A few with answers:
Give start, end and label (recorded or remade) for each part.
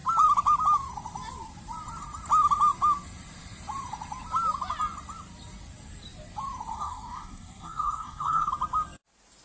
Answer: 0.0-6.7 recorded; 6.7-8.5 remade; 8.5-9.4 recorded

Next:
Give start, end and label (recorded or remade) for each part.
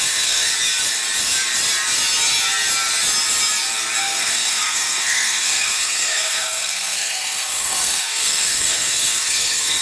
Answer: 0.0-0.5 remade; 0.5-4.0 recorded; 4.0-9.8 remade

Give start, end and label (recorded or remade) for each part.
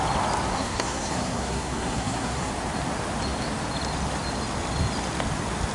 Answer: 0.0-0.5 recorded; 0.5-2.5 remade; 2.5-5.7 recorded